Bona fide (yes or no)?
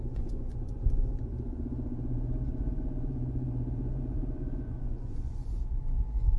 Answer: no